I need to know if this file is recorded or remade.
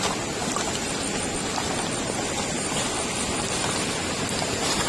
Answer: recorded